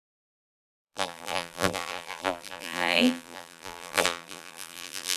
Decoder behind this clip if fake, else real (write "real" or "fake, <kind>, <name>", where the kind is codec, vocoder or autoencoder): fake, vocoder, BigVGAN v2